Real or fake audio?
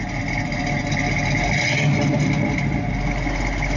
real